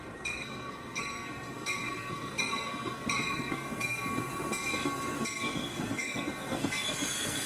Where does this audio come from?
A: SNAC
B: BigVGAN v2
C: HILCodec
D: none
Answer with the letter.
A